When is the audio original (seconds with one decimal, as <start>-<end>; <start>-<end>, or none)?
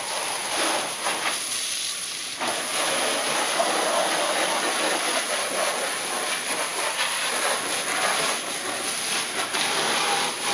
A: 0.0-10.5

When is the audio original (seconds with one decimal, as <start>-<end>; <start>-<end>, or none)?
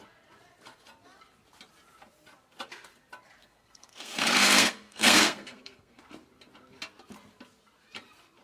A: 0.0-3.4; 6.0-8.4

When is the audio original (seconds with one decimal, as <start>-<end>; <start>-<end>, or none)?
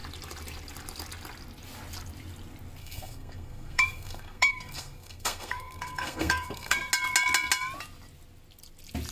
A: 0.0-2.8; 6.9-9.1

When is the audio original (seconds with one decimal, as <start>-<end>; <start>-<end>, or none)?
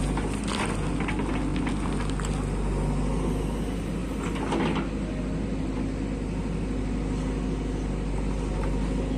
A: 0.0-9.2